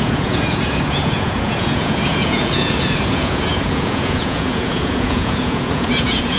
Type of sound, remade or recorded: remade